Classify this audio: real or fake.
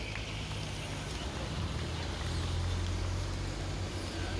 real